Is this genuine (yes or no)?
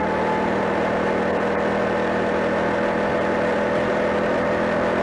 yes